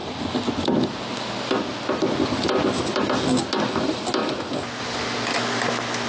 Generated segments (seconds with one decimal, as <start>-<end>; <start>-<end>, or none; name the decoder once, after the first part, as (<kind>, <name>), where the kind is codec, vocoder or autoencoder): none